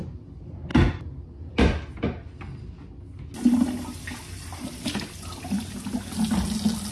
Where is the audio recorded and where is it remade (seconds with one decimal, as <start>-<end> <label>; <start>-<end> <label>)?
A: 0.0-6.9 recorded